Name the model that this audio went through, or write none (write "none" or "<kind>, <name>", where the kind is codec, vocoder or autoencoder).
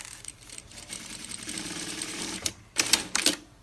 vocoder, BigVGAN v2